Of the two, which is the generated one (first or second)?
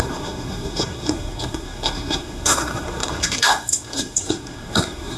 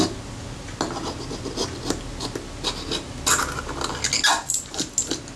first